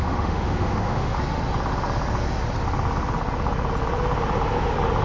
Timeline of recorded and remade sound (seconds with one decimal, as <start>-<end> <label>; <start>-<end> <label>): 0.0-1.2 remade; 1.2-5.0 recorded